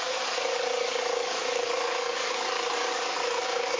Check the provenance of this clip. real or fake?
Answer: fake